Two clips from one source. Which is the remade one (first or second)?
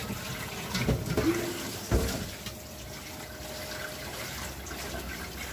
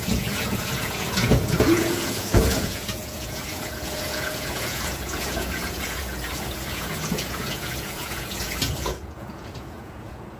second